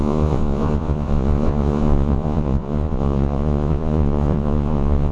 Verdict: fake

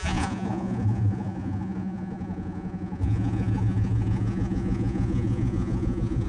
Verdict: fake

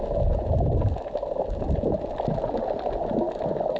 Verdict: real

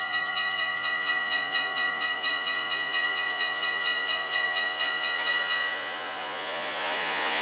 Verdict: fake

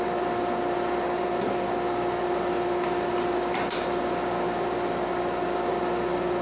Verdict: real